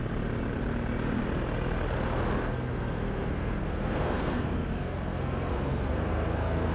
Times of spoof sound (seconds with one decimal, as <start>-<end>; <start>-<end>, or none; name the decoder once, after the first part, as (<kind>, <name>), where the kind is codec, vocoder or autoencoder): 2.4-6.7 (codec, SNAC)